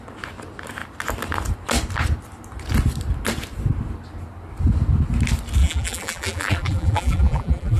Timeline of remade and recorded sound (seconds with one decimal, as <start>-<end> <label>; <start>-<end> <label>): 0.0-5.6 recorded; 5.6-7.8 remade